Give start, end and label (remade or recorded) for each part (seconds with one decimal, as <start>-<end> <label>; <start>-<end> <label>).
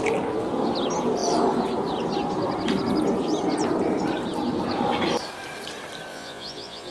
0.0-6.1 recorded; 6.1-6.9 remade